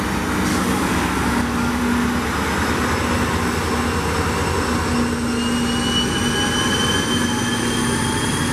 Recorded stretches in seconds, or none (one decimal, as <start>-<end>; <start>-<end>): 0.0-0.5; 1.8-8.5